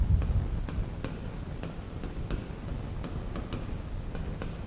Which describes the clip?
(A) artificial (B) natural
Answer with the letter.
B